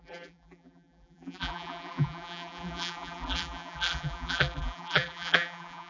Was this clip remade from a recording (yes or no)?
yes